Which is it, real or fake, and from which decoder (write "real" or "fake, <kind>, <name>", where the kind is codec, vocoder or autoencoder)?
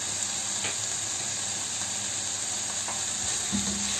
real